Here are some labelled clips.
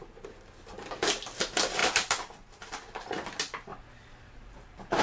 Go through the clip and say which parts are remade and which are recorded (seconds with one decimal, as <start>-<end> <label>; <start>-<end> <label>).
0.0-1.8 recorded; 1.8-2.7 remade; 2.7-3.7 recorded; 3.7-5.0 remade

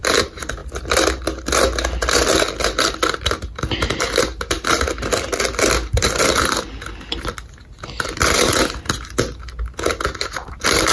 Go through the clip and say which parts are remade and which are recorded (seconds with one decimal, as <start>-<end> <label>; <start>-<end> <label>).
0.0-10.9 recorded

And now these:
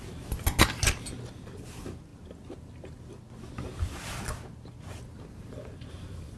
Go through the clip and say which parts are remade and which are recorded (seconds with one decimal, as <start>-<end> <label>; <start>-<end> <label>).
0.0-6.4 recorded